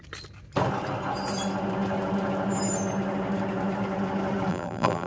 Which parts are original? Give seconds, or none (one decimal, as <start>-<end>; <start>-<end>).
0.0-4.5